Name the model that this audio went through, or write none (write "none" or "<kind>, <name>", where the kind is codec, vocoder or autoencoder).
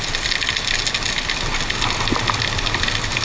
none